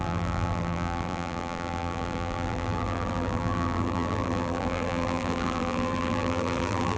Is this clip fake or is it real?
fake